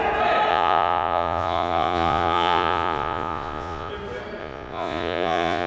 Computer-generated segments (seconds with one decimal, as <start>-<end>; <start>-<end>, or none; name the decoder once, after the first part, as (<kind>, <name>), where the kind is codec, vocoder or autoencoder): 0.5-3.9 (vocoder, Vocos); 4.4-5.7